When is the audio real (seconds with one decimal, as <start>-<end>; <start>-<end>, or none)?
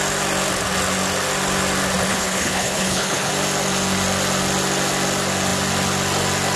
0.0-2.1; 3.3-6.6